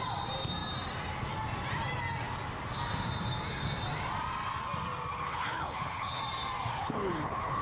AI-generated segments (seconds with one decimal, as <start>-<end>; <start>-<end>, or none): 5.1-6.2; 6.7-7.6